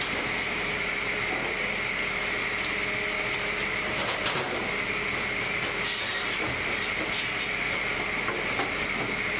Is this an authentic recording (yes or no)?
yes